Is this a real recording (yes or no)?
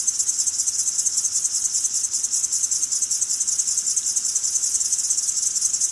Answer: yes